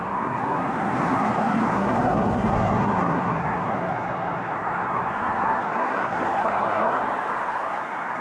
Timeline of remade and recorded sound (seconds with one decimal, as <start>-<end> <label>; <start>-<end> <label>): 0.0-7.0 remade; 7.0-7.5 recorded; 7.5-8.2 remade